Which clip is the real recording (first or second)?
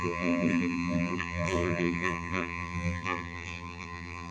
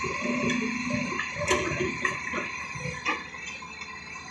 second